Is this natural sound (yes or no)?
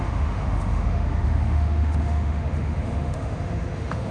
no